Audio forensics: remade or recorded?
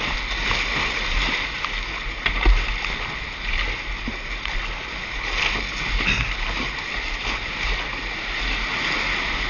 recorded